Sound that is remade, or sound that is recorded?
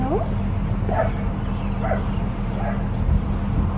recorded